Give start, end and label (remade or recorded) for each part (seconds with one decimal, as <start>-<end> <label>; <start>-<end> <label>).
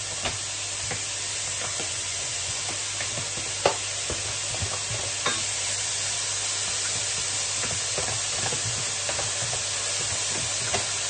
0.0-1.7 recorded; 1.7-2.6 remade; 2.6-11.1 recorded